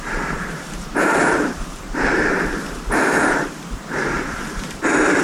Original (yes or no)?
no